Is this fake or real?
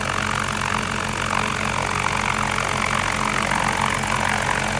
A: real